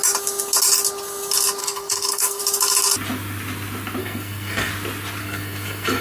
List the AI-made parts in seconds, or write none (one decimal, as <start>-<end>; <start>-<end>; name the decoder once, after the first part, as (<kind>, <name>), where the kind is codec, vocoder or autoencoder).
1.6-2.4 (codec, SNAC); 4.0-4.7; 5.2-6.0